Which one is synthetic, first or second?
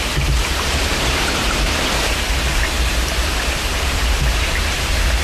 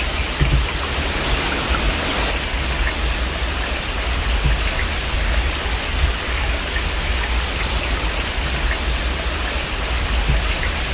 first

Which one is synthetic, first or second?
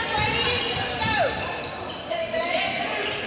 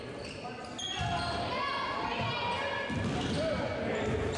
first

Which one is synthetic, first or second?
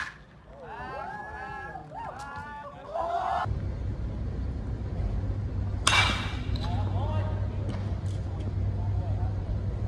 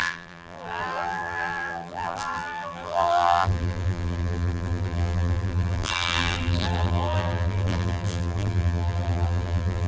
second